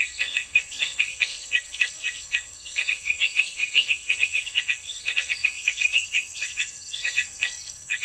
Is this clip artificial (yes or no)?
yes